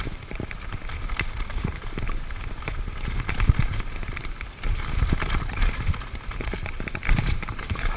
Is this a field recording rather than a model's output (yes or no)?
yes